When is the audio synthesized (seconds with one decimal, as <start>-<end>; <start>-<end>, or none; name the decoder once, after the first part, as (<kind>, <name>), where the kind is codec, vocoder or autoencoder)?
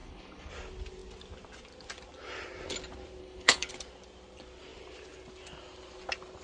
0.0-0.5 (codec, HILCodec); 3.2-3.7